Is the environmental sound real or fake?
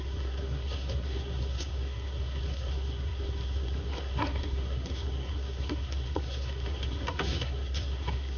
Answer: fake